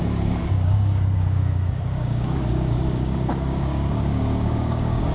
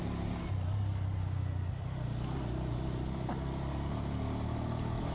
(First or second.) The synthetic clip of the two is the first